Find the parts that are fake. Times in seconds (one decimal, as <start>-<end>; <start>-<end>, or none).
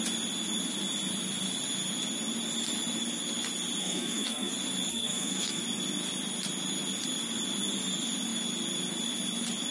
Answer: 3.8-4.5; 4.9-5.6